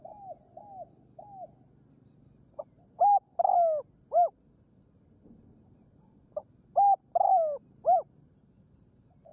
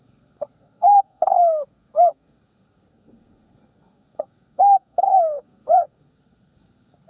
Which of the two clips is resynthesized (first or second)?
second